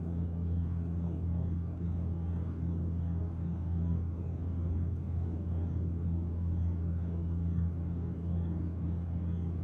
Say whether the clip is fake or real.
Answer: fake